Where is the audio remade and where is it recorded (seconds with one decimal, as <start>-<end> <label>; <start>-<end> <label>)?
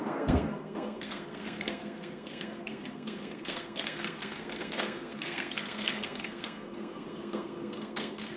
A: 0.0-8.4 remade